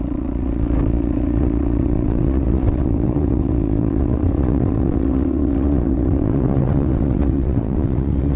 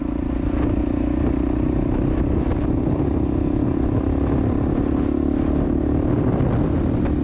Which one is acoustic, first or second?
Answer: second